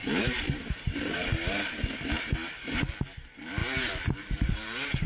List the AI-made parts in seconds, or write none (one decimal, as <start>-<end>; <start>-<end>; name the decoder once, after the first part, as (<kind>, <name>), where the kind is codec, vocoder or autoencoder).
0.0-5.1 (vocoder, BigVGAN v2)